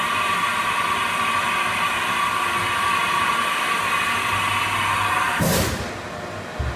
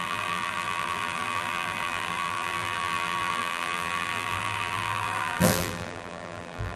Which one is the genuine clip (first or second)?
first